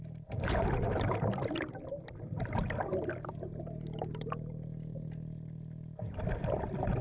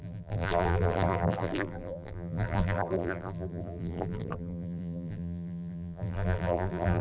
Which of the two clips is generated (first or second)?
second